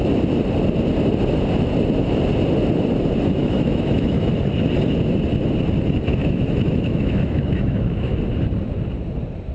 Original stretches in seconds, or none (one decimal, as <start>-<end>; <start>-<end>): 0.0-3.4; 4.3-6.2; 8.2-9.5